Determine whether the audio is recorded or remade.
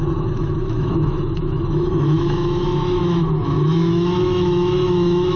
remade